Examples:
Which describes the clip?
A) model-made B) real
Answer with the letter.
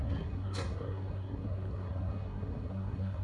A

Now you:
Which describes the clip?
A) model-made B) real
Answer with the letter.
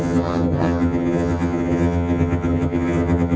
A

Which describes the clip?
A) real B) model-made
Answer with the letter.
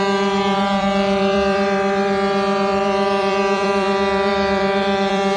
B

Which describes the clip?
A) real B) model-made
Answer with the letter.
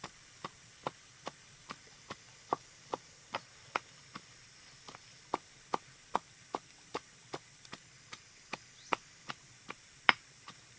B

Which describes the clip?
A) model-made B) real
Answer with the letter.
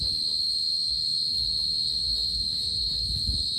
A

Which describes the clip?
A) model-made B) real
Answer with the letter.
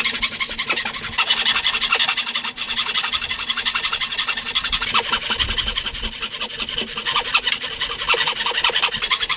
B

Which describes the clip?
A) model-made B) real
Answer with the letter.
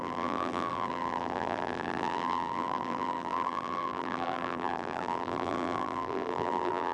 A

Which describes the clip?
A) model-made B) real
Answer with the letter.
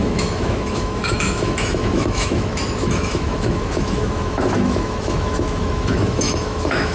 A